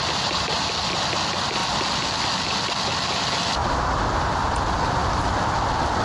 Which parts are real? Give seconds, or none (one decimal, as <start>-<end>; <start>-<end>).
0.0-3.6; 4.6-6.0